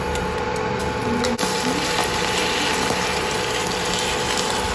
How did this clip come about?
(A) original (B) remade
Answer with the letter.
A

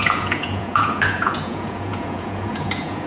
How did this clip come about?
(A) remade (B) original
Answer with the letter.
A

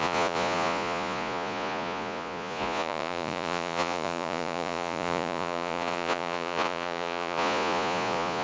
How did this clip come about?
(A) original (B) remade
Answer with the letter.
B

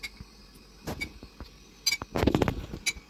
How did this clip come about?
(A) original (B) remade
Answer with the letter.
A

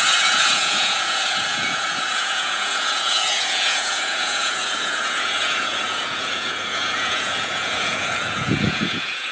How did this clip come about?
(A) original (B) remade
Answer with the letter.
B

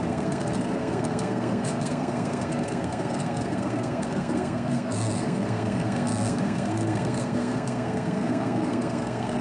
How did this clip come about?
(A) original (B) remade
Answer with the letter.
B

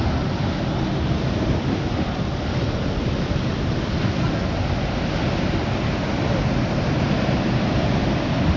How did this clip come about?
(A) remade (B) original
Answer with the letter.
B